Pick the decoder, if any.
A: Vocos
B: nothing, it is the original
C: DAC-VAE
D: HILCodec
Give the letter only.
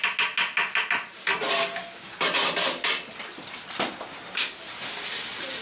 B